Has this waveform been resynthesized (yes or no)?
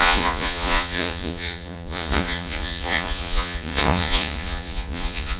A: yes